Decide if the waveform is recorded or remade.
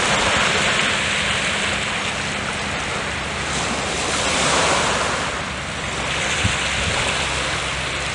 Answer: recorded